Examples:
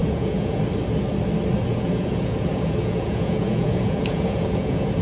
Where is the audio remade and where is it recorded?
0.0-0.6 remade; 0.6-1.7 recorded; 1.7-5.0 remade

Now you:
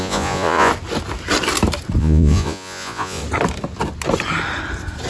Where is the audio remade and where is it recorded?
0.0-0.7 remade; 0.7-2.0 recorded; 2.0-3.2 remade; 3.2-5.1 recorded

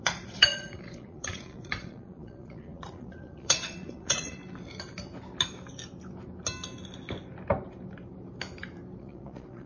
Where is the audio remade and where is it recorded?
0.0-4.4 remade; 4.4-9.0 recorded; 9.0-9.7 remade

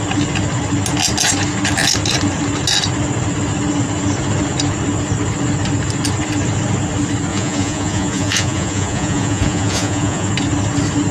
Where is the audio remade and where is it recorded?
0.0-7.3 recorded; 7.3-10.3 remade; 10.3-11.1 recorded

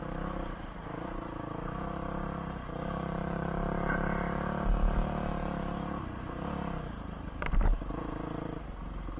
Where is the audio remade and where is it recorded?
0.0-9.2 recorded

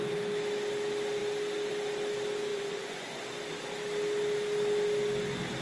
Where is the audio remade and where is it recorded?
0.0-2.5 recorded; 2.5-3.2 remade; 3.2-5.6 recorded

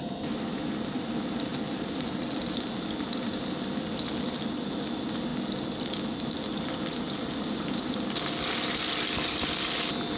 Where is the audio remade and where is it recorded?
0.0-10.2 recorded

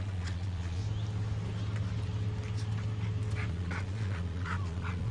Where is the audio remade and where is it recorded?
0.0-0.8 remade; 0.8-3.5 recorded; 3.5-5.1 remade